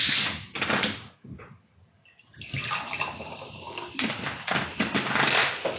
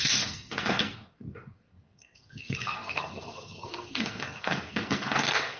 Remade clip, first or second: second